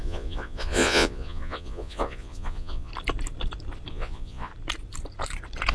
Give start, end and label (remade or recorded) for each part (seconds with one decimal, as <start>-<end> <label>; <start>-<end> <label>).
0.0-2.9 remade; 2.9-3.9 recorded; 3.9-4.5 remade; 4.5-5.7 recorded